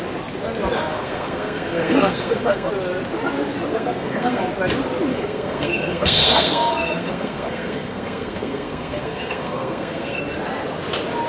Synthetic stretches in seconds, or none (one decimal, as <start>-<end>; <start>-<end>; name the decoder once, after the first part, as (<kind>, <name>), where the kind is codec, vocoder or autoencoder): 0.9-2.7 (codec, SNAC); 3.7-4.4; 5.1-10.2